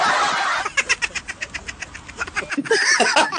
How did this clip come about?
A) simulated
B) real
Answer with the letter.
B